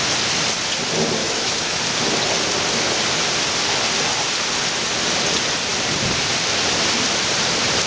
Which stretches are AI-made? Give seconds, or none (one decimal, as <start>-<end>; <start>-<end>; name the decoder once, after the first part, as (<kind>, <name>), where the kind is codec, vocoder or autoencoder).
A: 1.2-1.8 (autoencoder, DAC-VAE)